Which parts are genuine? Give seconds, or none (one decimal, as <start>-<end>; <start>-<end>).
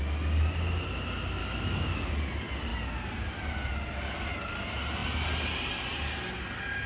0.0-1.4; 2.1-6.9